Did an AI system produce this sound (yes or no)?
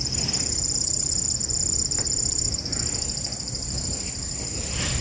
no